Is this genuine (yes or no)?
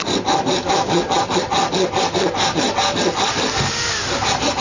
yes